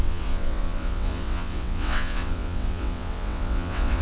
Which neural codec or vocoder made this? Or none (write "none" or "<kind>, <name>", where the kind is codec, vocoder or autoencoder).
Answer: vocoder, WaveNeXt